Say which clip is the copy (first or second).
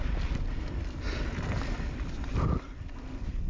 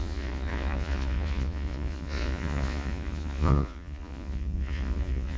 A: second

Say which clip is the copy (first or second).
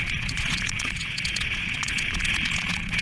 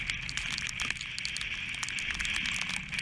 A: first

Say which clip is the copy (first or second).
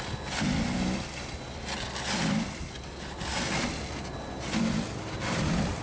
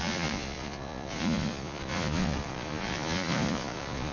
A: second